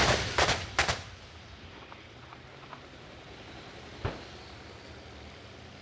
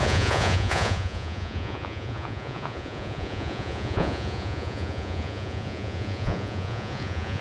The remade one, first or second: second